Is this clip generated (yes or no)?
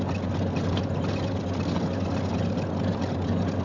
no